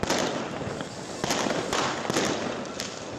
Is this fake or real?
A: real